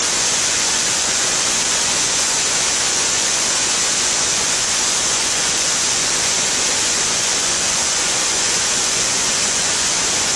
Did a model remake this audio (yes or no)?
yes